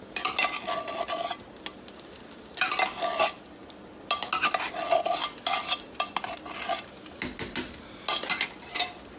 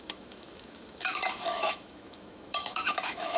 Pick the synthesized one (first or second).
second